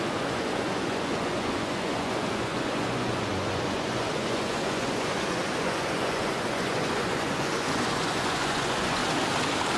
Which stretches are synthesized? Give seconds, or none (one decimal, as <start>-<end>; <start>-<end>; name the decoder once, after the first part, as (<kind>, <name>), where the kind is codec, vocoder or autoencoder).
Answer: 0.0-9.0 (vocoder, Vocos)